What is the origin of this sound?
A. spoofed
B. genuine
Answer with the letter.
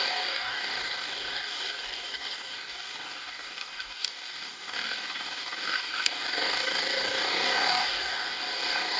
A